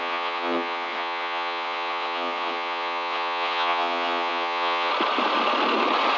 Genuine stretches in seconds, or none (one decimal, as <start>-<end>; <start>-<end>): 4.9-6.2